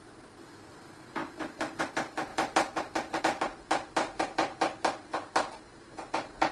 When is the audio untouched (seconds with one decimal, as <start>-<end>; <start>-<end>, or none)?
0.0-1.2; 1.9-6.5